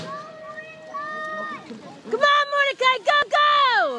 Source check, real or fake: real